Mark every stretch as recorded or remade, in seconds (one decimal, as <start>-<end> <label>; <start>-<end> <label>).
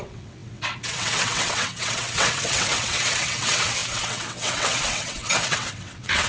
0.0-6.3 remade